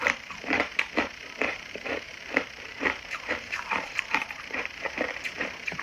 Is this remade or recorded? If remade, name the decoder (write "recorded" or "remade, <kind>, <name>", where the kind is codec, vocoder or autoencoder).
remade, vocoder, BigVGAN v2